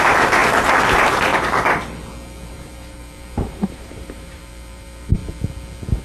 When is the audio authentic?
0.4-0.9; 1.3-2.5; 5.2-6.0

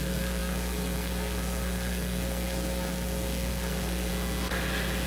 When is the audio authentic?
4.1-5.1

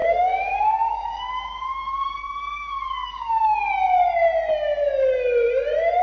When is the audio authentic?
3.6-6.0

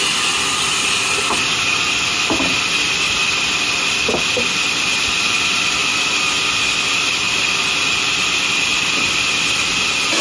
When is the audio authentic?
0.0-10.2

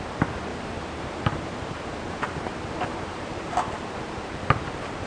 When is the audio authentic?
0.0-0.5; 3.6-5.1

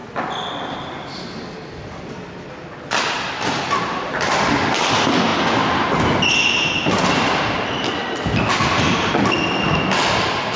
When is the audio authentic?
0.0-10.6